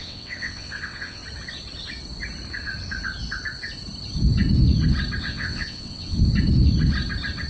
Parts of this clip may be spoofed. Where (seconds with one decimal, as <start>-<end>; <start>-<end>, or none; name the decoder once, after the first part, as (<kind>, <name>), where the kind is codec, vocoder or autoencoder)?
0.0-1.2 (vocoder, WaveNeXt); 5.2-6.3